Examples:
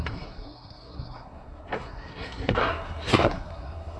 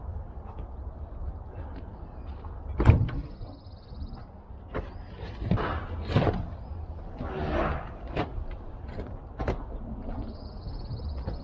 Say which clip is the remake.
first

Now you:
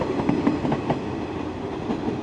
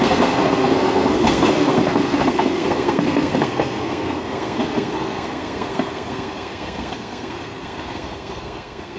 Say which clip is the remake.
second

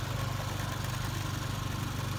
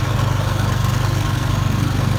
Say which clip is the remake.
second